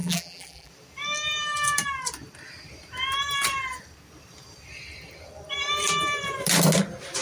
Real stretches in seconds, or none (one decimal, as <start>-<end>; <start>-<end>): 0.7-7.2